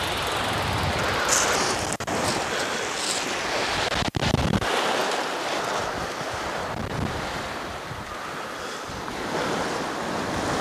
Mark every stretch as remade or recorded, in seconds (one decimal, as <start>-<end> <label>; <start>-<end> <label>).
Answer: 0.0-5.0 recorded; 5.0-6.7 remade; 6.7-10.6 recorded